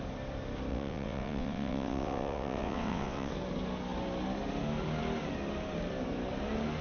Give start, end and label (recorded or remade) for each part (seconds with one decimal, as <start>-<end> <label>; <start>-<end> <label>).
0.0-0.7 recorded; 0.7-3.3 remade; 3.3-6.8 recorded